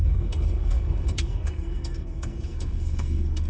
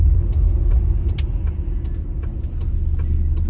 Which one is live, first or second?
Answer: second